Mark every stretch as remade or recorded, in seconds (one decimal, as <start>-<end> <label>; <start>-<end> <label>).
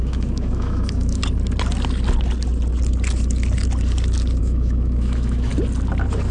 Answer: 0.0-1.2 remade; 1.2-4.4 recorded; 4.4-5.5 remade; 5.5-6.3 recorded